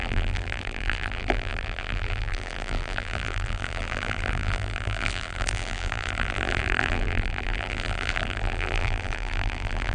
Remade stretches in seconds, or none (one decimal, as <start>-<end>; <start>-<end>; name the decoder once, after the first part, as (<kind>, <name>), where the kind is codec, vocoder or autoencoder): 0.0-9.9 (vocoder, BigVGAN v2)